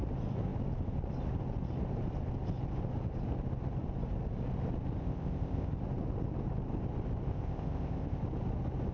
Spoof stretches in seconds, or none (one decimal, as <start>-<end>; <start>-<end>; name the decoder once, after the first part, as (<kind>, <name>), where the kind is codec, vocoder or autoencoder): 5.0-5.7 (codec, ZipCodec); 7.3-8.2